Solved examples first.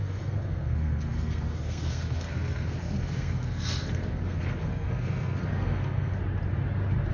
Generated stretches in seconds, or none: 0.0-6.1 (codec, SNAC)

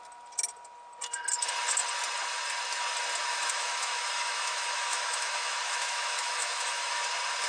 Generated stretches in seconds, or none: 3.3-7.0 (autoencoder, DAC-VAE)

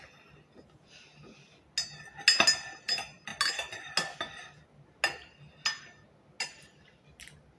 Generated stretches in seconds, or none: none

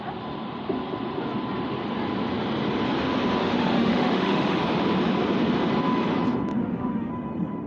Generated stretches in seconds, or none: 3.4-4.6 (autoencoder, DAC-VAE); 6.5-7.1

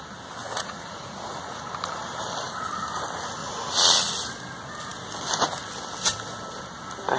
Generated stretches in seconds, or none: 0.4-1.6 (vocoder, Vocos); 3.4-4.1

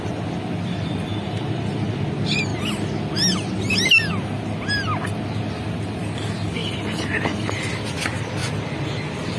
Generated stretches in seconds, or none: 1.1-2.1 (vocoder, BigVGAN v2); 6.6-7.6